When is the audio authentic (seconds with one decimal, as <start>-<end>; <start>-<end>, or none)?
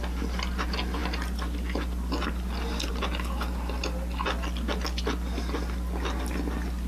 0.0-6.9